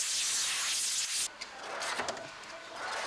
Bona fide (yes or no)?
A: yes